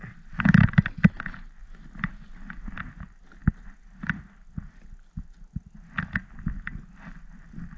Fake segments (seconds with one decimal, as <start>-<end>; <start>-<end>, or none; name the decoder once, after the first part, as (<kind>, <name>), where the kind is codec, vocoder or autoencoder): none